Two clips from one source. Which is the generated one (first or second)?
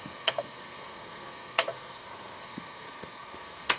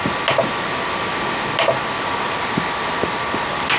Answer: first